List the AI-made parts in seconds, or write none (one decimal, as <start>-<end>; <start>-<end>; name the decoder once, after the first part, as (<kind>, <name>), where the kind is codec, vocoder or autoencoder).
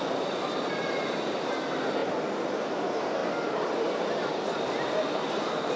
none